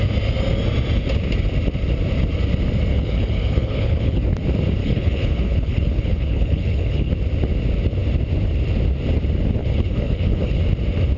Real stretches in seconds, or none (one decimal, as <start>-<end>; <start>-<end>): 0.0-2.9; 4.2-4.8; 7.1-9.6; 10.6-11.2